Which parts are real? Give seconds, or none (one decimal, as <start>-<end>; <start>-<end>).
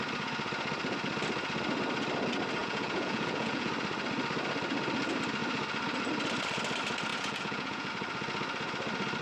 0.0-2.6; 3.7-7.1; 7.9-9.2